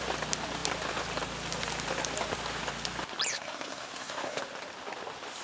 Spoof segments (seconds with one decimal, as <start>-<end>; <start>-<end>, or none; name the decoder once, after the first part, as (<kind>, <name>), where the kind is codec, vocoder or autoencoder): 3.3-4.4 (codec, SNAC)